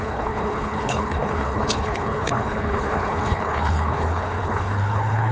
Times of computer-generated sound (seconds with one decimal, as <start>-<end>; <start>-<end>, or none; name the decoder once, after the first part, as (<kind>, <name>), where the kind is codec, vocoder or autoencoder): 0.0-5.3 (codec, HILCodec)